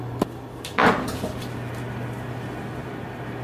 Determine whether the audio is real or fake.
real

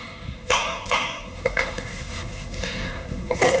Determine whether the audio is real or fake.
fake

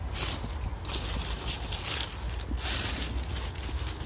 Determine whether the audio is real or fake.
real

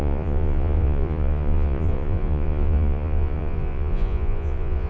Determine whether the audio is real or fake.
fake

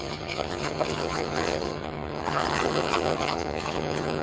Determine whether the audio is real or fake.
fake